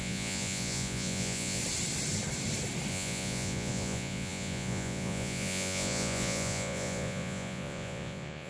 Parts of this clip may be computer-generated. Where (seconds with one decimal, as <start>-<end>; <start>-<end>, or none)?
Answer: 0.0-1.6; 2.9-8.5